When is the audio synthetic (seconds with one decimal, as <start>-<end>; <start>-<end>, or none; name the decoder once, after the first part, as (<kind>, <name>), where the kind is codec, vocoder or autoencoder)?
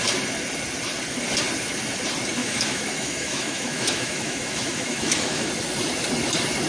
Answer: 2.4-5.5 (autoencoder, DAC-VAE)